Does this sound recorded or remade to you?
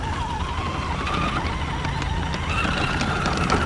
recorded